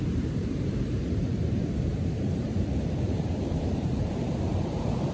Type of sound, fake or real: fake